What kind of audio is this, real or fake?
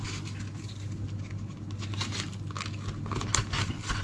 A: real